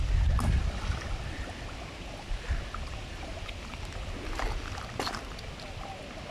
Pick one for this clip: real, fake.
real